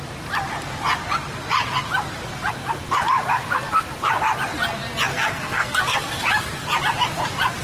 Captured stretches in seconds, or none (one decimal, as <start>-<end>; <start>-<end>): 0.0-5.1; 5.8-7.6